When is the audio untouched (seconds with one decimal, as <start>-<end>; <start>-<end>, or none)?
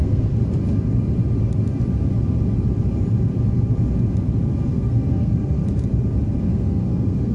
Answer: 0.4-4.7; 5.6-6.4